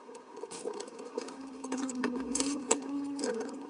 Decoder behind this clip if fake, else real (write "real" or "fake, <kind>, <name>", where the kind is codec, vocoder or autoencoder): fake, codec, SNAC